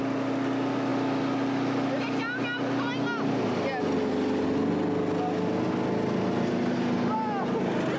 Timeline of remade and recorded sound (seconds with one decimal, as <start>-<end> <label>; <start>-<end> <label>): 0.0-8.0 recorded